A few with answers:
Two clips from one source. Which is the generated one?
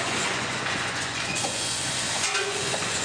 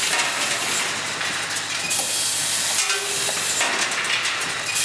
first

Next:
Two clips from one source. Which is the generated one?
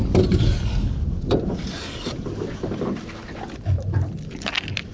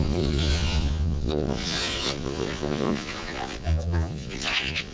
second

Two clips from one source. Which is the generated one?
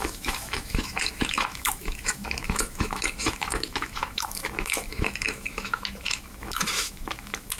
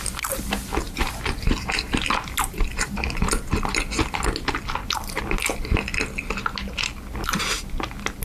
first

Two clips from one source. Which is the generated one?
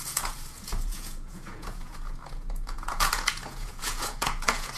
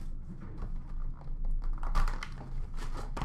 first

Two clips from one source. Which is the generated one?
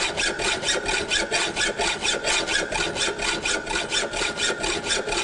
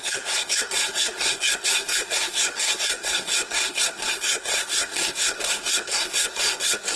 second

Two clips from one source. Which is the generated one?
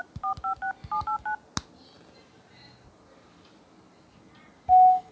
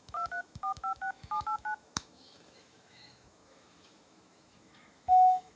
second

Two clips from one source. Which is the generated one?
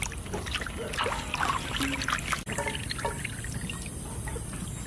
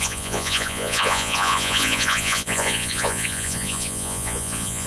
second